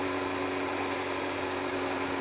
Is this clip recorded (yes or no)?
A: yes